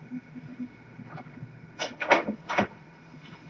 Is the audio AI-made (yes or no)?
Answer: yes